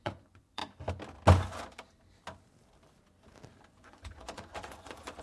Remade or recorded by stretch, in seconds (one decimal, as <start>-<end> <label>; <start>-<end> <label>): 0.0-0.6 remade; 0.6-3.7 recorded; 3.7-5.2 remade